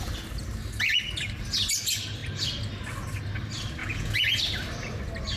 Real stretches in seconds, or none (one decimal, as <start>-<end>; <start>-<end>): 0.0-3.8; 4.4-5.4